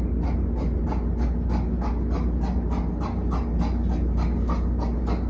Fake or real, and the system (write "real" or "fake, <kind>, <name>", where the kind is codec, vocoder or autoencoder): real